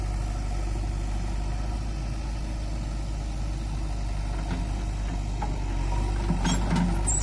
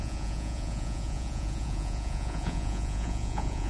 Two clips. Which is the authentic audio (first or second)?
first